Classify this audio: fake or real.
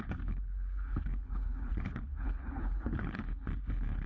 fake